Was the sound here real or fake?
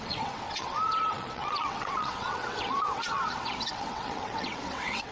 fake